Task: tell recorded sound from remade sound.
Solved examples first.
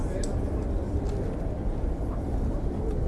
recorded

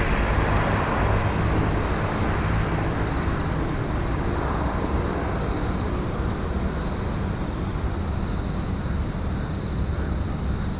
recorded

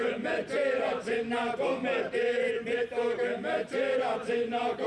remade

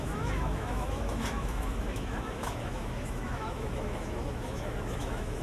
remade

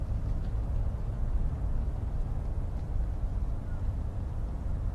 remade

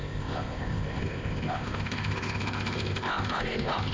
remade